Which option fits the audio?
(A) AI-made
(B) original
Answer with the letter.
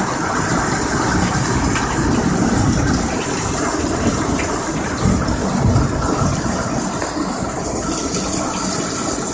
B